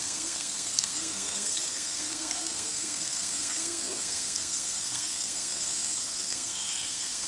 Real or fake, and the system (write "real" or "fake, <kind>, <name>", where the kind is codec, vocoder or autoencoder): fake, codec, SNAC